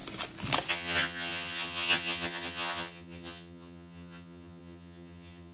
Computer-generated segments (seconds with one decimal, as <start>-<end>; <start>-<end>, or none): 0.7-5.5